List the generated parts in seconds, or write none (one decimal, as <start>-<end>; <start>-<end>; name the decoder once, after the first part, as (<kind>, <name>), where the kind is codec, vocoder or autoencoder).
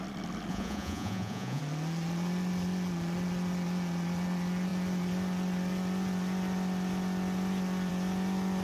0.5-1.6 (vocoder, Vocos)